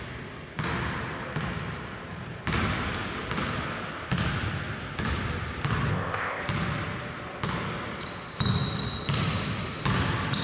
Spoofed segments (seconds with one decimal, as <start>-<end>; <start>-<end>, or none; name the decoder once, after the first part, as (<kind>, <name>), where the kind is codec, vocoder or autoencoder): 5.9-6.4 (codec, ZipCodec)